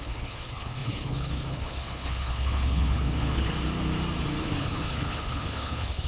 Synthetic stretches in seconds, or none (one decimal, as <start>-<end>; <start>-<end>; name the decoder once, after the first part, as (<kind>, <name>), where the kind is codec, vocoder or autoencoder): 0.0-3.5 (codec, HILCodec); 4.4-6.1